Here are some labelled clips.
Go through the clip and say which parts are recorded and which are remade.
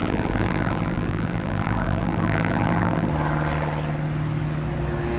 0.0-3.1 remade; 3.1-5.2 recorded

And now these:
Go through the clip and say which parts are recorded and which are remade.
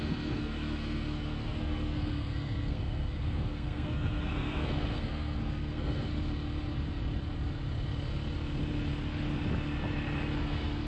0.0-6.1 remade; 6.1-10.4 recorded; 10.4-10.9 remade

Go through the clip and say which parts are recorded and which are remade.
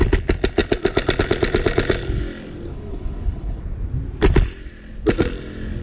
0.0-2.7 recorded; 2.7-3.6 remade; 3.6-5.8 recorded